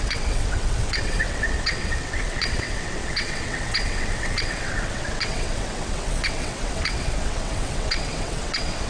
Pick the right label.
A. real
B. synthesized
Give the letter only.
B